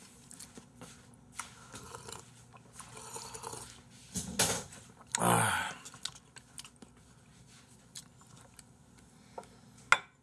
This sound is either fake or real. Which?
real